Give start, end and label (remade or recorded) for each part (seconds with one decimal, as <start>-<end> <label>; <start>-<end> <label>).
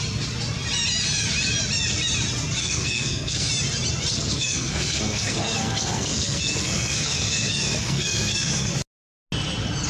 0.0-2.6 recorded; 2.6-3.5 remade; 3.5-4.1 recorded; 4.1-8.7 remade; 8.7-9.9 recorded